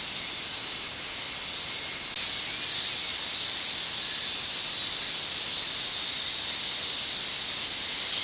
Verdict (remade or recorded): recorded